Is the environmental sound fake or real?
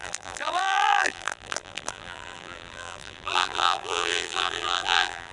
fake